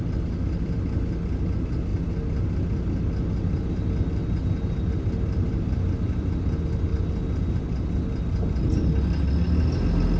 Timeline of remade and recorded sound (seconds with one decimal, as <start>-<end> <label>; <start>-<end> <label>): 0.0-10.2 recorded